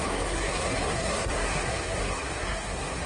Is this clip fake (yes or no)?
yes